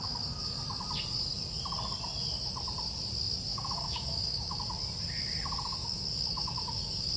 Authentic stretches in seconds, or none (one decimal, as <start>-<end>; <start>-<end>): 0.0-3.5; 4.6-5.7

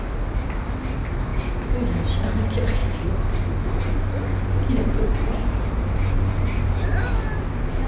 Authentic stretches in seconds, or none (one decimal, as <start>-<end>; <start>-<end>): 0.0-7.9

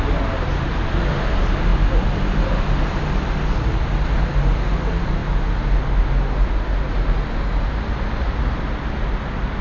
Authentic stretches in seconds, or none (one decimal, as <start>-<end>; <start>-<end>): 0.0-9.6

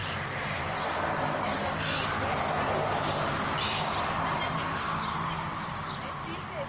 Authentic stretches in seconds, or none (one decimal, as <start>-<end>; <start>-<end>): 0.0-6.7

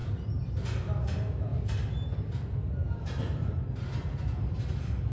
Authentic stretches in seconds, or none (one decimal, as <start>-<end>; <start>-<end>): 0.0-5.1

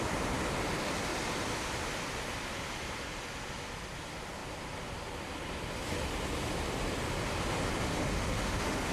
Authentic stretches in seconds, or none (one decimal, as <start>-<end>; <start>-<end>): 0.0-8.0

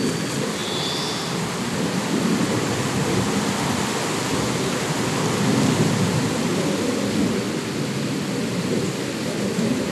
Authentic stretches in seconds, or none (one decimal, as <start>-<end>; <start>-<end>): 0.0-9.9